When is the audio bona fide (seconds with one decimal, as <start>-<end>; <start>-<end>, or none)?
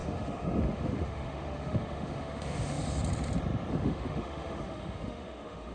2.8-3.7